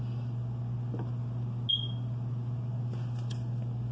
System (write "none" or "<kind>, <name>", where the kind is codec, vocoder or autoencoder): none